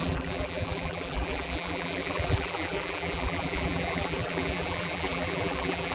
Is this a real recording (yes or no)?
no